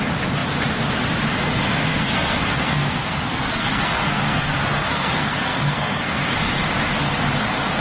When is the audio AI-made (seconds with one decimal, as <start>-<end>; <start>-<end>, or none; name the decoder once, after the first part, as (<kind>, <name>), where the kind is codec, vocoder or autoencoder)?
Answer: 1.9-6.4 (codec, SNAC)